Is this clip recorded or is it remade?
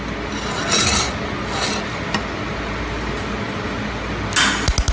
recorded